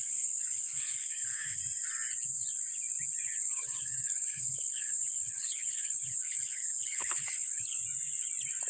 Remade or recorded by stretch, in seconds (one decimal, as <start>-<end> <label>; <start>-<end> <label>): 0.0-1.6 remade; 1.6-3.4 recorded; 3.4-7.8 remade; 7.8-8.7 recorded